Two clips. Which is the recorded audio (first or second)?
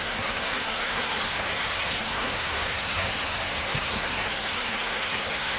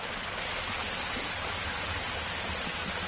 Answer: second